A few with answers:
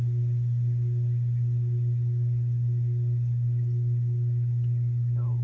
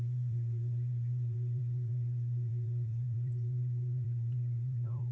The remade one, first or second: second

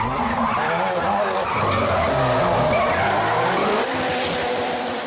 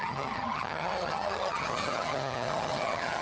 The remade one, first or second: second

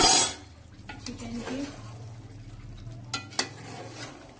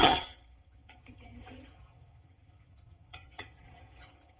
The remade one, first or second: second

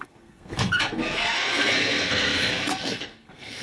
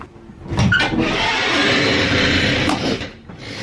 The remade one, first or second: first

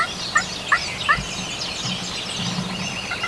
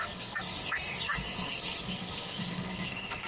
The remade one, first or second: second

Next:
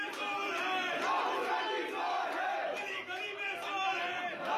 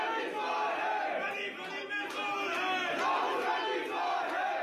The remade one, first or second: first